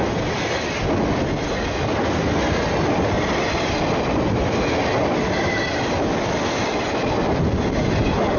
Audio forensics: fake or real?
real